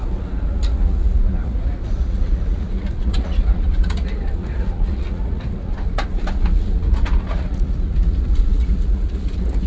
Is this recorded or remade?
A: remade